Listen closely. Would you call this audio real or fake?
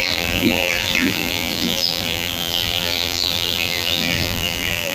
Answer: fake